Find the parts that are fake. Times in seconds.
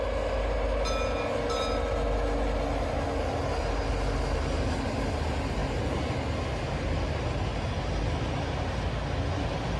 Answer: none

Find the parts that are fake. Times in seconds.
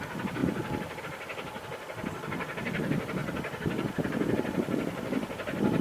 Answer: none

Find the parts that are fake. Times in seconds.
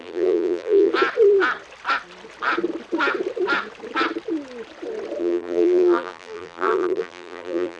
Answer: 0.0-0.9 (vocoder, BigVGAN v2); 5.2-7.8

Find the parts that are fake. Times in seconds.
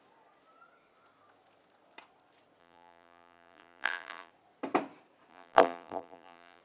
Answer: 2.6-4.3 (vocoder, BigVGAN v2); 5.3-6.6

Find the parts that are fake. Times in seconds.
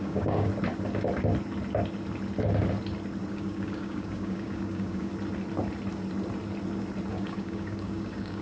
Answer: 0.0-0.5 (codec, DAC); 3.3-5.1; 7.1-8.4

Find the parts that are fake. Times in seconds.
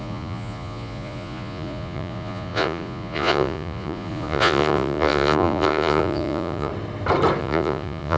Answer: 0.0-6.7 (vocoder, Vocos); 7.4-8.2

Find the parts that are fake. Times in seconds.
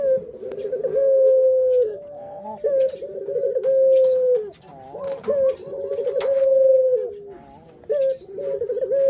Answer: 0.9-2.4 (codec, SNAC)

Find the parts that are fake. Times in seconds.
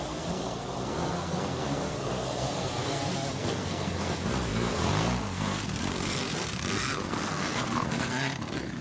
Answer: 0.0-8.8 (codec, SNAC)